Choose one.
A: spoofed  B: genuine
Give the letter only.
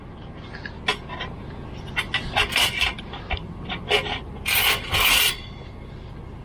B